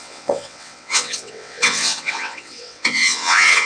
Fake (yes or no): yes